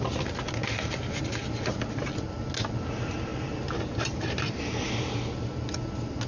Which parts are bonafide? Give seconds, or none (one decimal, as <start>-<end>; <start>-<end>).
0.0-6.3